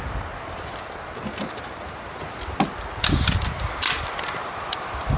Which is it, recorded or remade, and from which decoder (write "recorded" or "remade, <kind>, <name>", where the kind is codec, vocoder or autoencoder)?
recorded